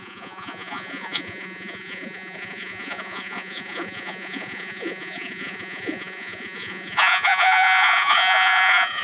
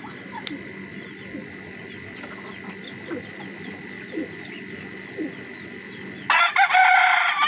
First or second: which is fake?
first